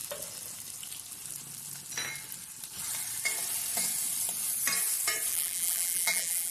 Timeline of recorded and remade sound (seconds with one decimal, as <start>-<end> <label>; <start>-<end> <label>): 0.0-5.3 recorded; 5.3-6.5 remade